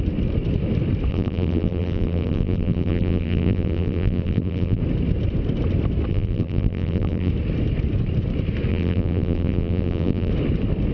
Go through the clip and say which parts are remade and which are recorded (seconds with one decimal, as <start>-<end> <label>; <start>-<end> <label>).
0.0-1.1 recorded; 1.1-4.8 remade; 4.8-6.1 recorded; 6.1-7.3 remade; 7.3-8.7 recorded; 8.7-10.3 remade; 10.3-10.9 recorded